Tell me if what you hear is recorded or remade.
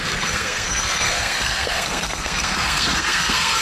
remade